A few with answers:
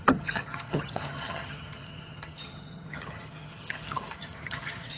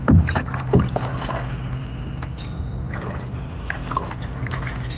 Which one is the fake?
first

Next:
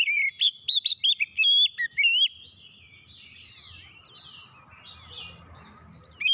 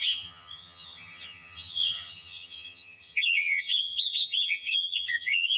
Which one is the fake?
second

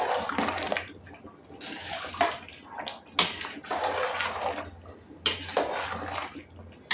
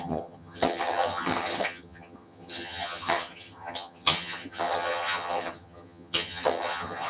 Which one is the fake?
second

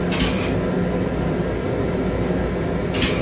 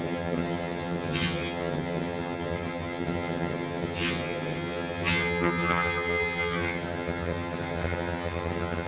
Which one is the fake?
second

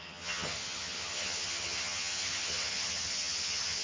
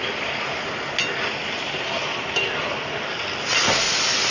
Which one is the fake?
first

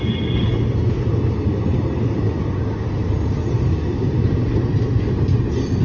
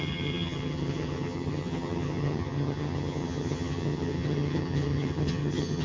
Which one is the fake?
second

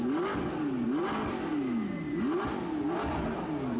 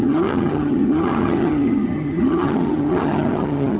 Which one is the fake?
second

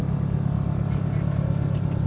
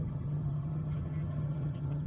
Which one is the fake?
second